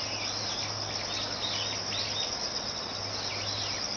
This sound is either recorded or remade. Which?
recorded